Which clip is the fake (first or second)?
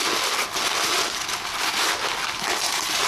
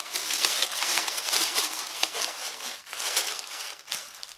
second